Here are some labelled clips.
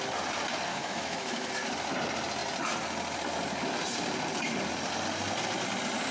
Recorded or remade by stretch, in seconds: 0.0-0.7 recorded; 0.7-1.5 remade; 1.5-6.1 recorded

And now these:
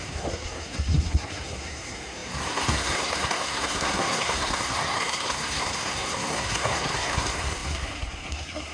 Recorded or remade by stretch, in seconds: 0.0-8.7 remade

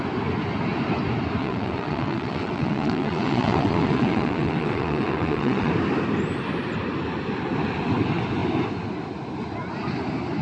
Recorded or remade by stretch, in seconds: 0.0-1.4 recorded; 1.4-5.7 remade; 5.7-10.4 recorded

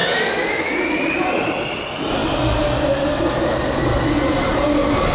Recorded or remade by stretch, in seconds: 0.0-0.7 remade; 0.7-5.1 recorded

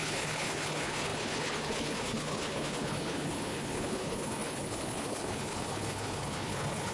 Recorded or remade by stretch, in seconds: 0.0-6.9 remade

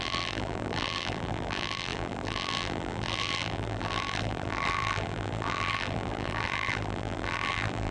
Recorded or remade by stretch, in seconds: 0.0-7.9 remade